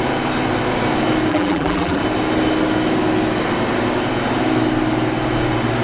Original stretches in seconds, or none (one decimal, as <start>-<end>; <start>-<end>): 0.0-1.3; 2.0-5.8